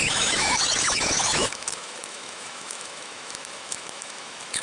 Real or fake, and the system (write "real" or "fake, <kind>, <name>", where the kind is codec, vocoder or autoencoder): fake, autoencoder, DAC-VAE